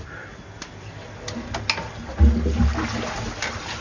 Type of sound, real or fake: real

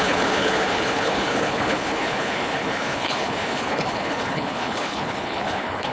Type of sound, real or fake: fake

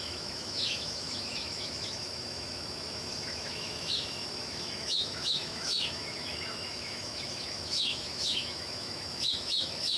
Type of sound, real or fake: fake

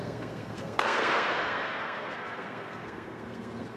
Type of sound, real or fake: fake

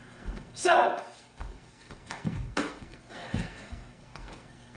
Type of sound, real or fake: fake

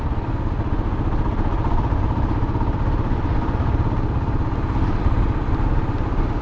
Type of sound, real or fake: real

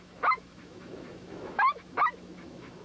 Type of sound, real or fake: fake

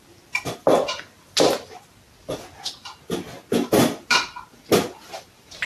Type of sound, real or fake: real